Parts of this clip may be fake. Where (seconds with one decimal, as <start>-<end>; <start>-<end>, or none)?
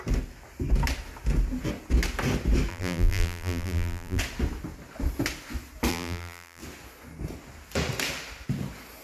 2.7-4.2; 5.9-6.6